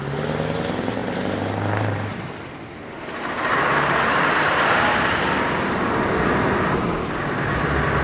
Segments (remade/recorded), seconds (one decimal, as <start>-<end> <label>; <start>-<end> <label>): 0.0-1.0 recorded; 1.0-5.2 remade; 5.2-8.0 recorded